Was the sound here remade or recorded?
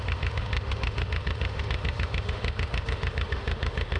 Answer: remade